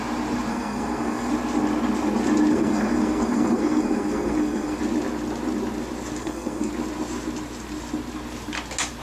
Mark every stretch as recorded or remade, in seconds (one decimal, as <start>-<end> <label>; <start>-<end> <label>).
0.0-0.5 recorded; 0.5-1.3 remade; 1.3-2.5 recorded; 2.5-4.8 remade; 4.8-6.2 recorded; 6.2-6.7 remade; 6.7-9.0 recorded